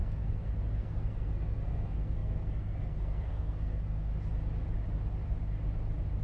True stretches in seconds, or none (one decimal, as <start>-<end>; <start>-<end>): 4.1-6.2